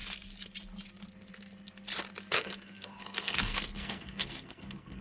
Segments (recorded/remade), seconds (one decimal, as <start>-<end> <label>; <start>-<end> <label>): 0.0-2.3 recorded; 2.3-5.0 remade